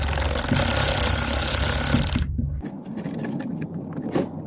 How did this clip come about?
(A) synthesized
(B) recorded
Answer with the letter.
B